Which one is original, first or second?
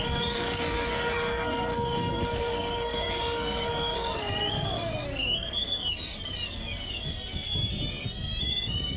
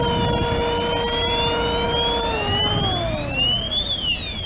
second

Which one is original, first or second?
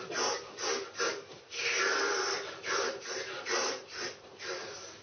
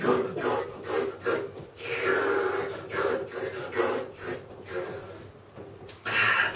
second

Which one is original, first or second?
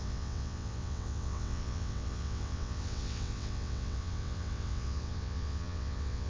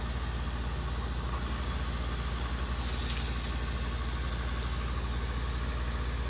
second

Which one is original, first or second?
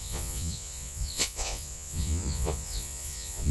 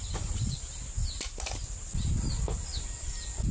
second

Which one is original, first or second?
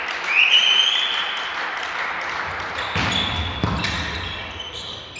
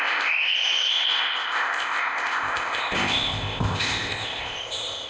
first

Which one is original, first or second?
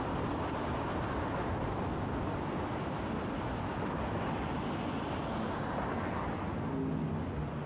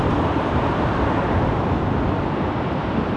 first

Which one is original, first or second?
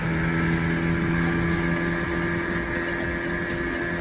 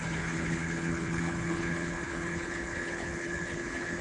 first